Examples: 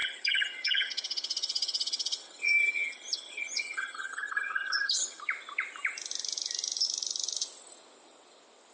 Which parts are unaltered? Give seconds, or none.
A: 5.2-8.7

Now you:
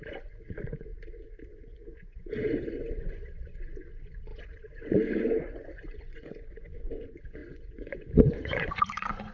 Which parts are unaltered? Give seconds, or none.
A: 0.9-1.5

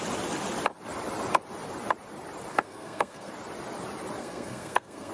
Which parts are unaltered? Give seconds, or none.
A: 0.0-2.5; 3.3-4.2

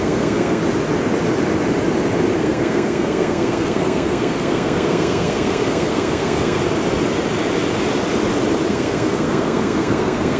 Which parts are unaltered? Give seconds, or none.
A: 0.6-2.4; 6.6-8.7

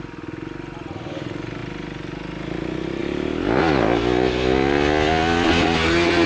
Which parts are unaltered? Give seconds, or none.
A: 0.0-6.3

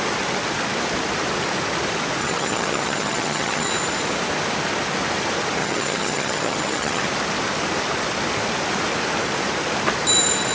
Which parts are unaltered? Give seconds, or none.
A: 0.0-2.2; 3.7-5.6; 7.0-10.5

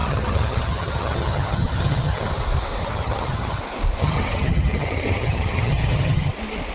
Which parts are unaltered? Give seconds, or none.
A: 2.3-2.8; 3.6-4.0; 6.3-6.7